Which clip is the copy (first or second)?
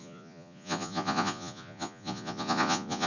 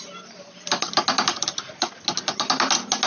first